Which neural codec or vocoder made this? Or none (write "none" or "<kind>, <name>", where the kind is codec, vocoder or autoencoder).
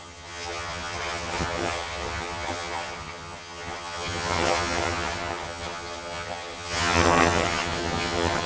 vocoder, HiFi-GAN